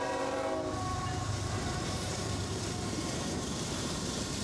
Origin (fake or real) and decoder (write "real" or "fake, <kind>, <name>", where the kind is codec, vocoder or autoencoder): fake, vocoder, BigVGAN v2